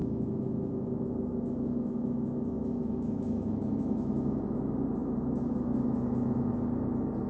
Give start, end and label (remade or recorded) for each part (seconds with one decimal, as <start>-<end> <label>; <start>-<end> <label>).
0.0-4.4 remade; 4.4-5.0 recorded; 5.0-6.5 remade; 6.5-7.3 recorded